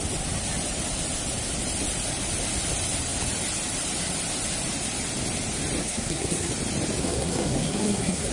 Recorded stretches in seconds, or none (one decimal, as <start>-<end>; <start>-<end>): 0.0-5.8; 6.5-7.0

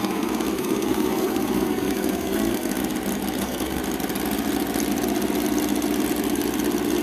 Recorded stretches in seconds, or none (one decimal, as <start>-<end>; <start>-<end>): 2.8-3.4; 3.8-7.0

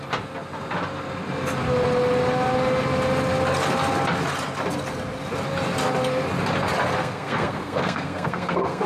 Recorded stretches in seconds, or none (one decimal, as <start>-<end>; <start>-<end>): 0.0-7.0

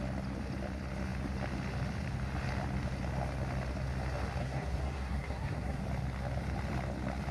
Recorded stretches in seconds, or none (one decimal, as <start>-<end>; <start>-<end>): 0.0-4.4; 5.8-7.3

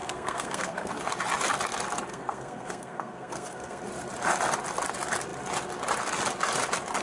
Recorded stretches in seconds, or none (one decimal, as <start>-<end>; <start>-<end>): 0.9-2.1; 3.8-7.0

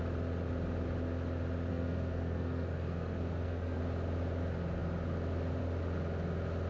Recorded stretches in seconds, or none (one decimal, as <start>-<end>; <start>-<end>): 0.0-1.7; 3.8-6.7